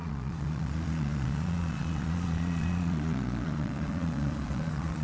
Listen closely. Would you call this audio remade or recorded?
remade